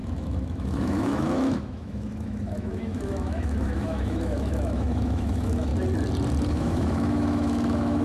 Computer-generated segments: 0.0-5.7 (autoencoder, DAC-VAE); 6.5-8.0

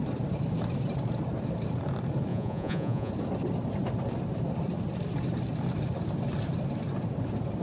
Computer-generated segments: 2.3-3.1 (vocoder, Vocos)

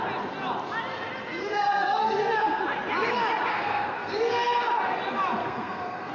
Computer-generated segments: 1.4-2.6 (codec, SNAC); 3.5-4.6; 5.4-6.1

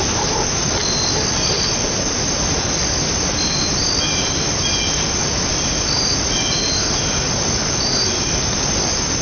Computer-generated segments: 5.2-6.1 (vocoder, BigVGAN v2)

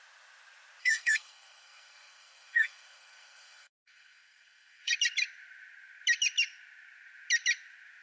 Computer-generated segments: 0.8-4.9 (codec, SNAC)